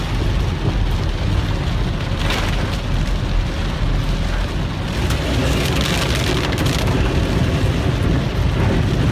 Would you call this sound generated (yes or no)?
no